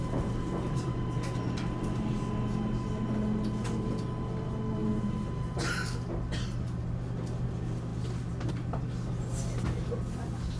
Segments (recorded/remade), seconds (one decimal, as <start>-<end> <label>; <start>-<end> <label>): 0.0-10.6 recorded